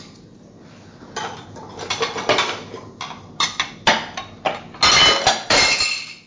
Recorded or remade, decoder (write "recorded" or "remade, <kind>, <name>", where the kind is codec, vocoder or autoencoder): recorded